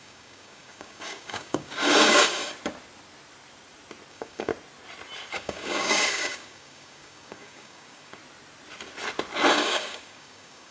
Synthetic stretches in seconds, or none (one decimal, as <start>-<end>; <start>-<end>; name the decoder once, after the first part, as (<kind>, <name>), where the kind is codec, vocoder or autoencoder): 0.0-2.4 (codec, DAC); 4.1-4.5; 5.3-8.2; 9.5-10.7